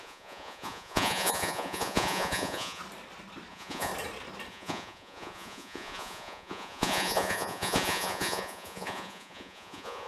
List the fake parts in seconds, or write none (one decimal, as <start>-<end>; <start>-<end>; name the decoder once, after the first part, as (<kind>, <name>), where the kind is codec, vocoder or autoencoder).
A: 0.0-2.8 (vocoder, Vocos); 3.5-3.9; 4.5-10.1